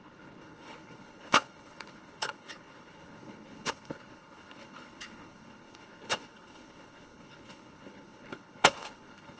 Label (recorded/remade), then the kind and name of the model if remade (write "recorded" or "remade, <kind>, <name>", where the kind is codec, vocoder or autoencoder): remade, codec, HILCodec